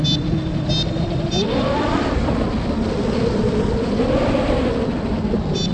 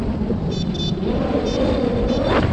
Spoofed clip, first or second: second